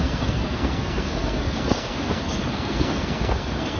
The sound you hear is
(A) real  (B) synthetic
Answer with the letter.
B